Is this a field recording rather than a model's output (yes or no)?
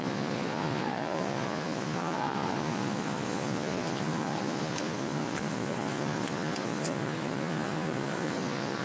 no